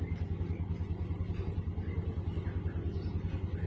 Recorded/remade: recorded